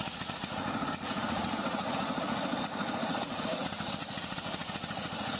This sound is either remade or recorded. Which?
remade